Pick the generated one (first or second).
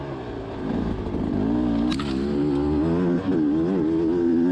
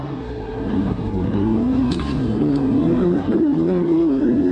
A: second